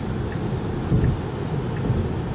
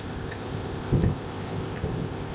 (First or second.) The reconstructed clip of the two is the second